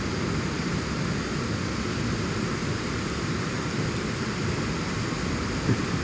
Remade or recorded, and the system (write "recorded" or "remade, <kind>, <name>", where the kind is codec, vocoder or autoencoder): recorded